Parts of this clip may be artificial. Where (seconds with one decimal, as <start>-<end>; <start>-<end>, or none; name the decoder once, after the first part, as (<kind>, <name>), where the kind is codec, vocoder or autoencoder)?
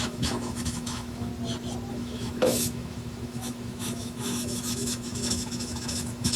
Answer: 0.0-1.3 (autoencoder, DAC-VAE); 1.9-6.4